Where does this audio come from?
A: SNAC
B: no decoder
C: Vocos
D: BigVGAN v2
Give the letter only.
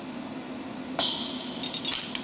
B